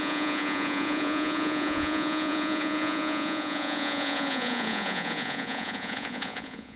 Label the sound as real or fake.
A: fake